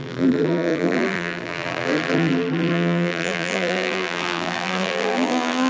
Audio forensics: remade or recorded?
remade